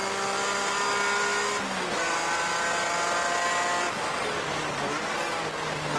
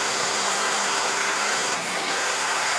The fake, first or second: second